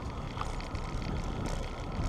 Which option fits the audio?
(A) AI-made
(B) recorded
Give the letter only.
B